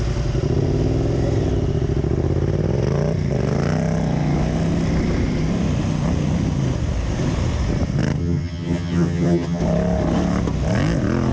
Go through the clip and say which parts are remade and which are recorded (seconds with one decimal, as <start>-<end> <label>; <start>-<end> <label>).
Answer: 0.0-8.2 recorded; 8.2-9.6 remade; 9.6-11.3 recorded